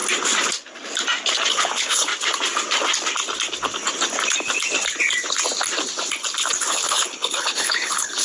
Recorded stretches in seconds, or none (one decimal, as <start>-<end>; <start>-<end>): 0.0-1.5; 2.1-6.7